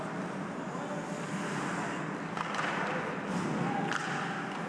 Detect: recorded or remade recorded